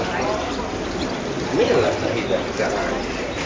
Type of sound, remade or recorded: recorded